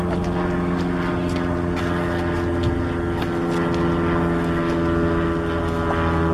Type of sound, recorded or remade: recorded